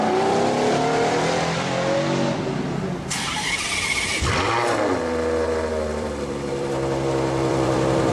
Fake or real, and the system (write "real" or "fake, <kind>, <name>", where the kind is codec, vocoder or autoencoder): fake, vocoder, BigVGAN v2